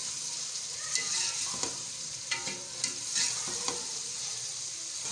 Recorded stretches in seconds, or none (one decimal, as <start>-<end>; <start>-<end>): 0.0-5.1